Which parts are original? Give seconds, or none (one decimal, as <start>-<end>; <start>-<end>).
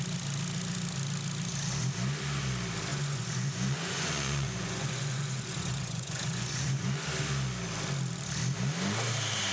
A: 0.0-2.9; 7.0-9.5